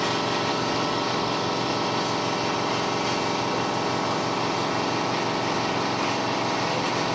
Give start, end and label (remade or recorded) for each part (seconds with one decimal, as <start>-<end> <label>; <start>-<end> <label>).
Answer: 0.0-0.5 recorded; 0.5-1.7 remade; 1.7-7.1 recorded